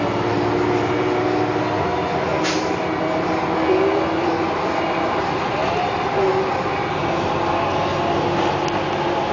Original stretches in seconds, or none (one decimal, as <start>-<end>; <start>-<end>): 0.0-9.3